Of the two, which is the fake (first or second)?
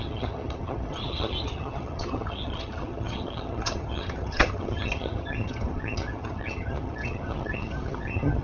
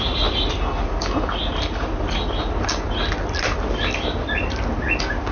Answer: first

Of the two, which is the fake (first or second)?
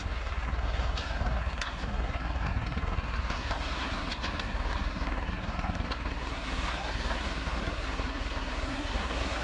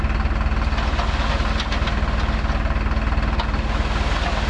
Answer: first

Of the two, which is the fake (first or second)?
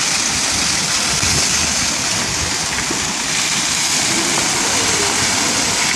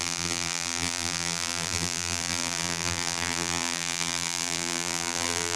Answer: second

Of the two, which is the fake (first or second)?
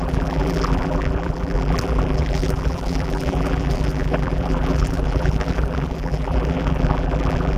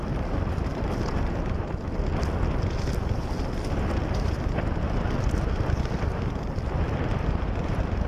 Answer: first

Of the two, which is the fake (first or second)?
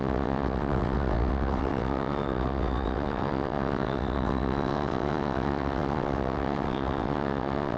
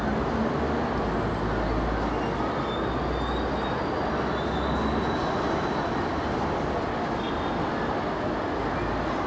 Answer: first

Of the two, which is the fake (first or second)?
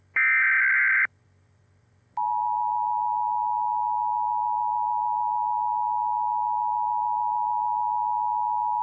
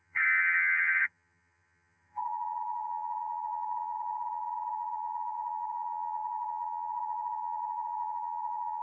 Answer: second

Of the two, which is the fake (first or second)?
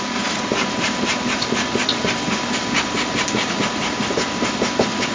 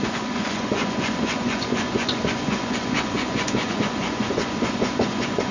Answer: second